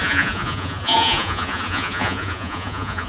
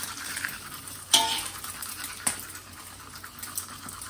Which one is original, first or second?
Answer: second